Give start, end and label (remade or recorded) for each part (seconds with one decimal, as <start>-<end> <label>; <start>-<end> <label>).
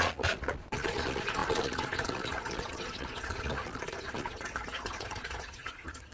0.0-6.1 remade